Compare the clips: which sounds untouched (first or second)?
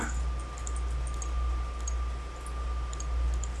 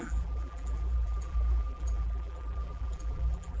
first